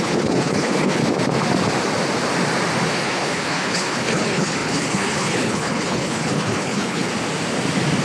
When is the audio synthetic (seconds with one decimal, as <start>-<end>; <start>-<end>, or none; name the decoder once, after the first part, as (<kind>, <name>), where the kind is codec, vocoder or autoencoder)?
0.0-1.0 (codec, HILCodec); 2.9-7.1